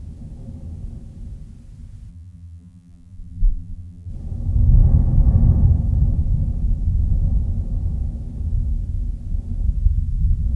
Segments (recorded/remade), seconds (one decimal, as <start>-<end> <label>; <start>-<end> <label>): 0.0-2.1 recorded; 2.1-4.1 remade; 4.1-10.6 recorded